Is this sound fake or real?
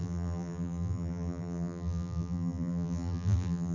fake